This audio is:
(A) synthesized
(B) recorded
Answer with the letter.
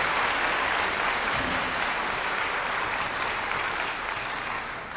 B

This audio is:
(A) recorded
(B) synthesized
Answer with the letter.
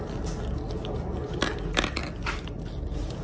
A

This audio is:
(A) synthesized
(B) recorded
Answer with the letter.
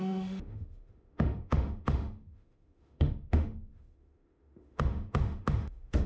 A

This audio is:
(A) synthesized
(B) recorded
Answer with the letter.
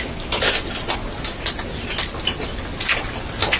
B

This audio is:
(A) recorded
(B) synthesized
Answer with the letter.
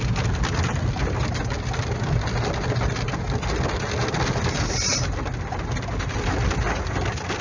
A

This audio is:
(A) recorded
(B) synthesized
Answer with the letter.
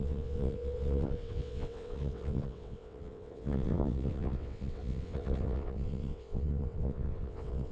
B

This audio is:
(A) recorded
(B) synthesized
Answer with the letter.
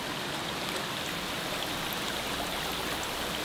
A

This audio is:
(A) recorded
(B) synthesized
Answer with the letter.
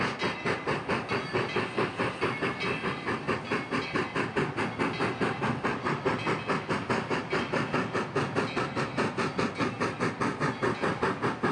A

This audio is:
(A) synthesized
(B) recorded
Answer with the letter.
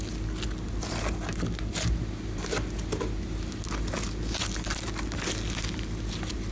B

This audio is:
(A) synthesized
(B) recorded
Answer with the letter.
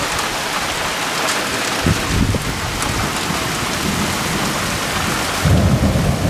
B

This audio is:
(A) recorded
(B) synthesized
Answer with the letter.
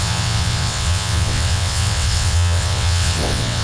B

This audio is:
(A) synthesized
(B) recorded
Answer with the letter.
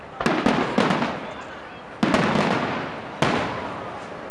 B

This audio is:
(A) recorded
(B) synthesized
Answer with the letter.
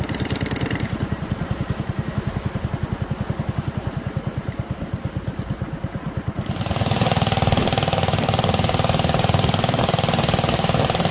B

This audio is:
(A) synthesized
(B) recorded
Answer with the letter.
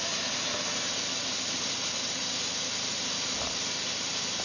B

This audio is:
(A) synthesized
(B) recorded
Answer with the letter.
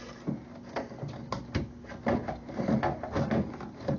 B